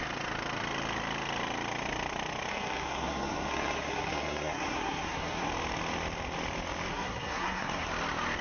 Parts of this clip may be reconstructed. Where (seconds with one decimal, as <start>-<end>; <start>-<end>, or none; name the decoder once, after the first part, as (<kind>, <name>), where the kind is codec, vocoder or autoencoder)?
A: 2.5-5.5 (codec, SNAC); 6.9-7.9